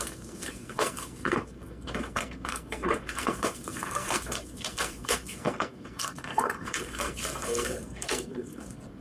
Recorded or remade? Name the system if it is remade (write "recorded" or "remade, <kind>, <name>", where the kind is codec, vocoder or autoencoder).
remade, codec, SNAC